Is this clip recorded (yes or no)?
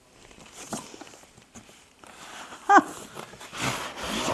yes